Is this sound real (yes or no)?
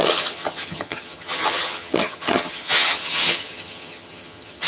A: no